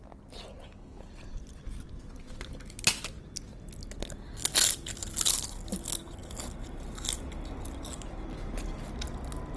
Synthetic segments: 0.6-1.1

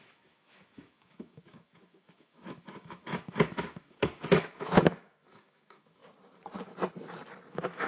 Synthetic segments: 0.0-6.0; 7.5-7.9

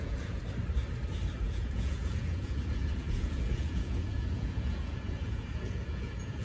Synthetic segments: 0.0-0.4; 1.4-6.4

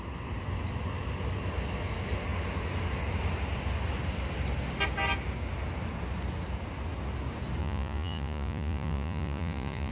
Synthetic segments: 7.6-9.9

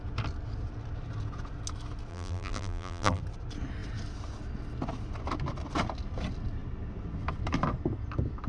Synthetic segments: 2.1-3.2